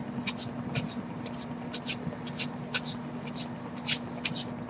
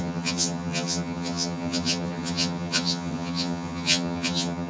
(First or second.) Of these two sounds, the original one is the first